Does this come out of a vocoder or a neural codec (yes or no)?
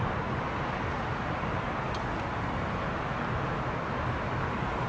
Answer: no